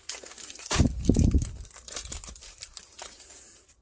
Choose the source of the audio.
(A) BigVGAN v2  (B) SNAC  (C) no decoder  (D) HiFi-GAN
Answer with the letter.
A